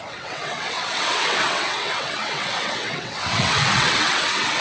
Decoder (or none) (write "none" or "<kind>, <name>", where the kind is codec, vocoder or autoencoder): vocoder, WaveNeXt